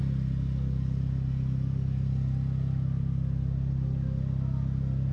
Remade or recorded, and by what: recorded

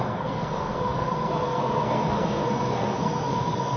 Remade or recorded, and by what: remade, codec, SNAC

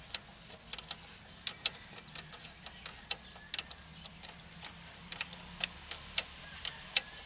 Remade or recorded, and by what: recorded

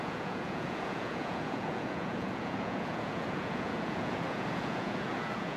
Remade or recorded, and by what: remade, vocoder, Vocos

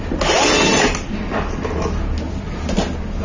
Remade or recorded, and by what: recorded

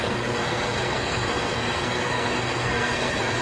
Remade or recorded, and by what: remade, codec, SNAC